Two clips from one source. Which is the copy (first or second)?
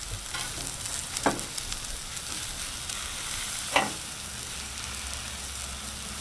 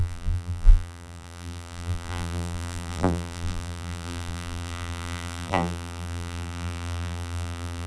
second